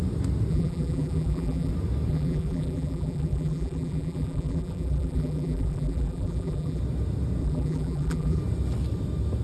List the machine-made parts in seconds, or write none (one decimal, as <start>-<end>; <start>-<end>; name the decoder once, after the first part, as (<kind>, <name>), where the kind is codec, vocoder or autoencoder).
0.5-1.7 (vocoder, BigVGAN v2); 2.1-6.8; 7.4-8.4